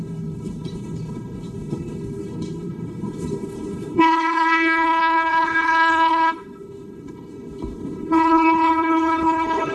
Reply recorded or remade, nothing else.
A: remade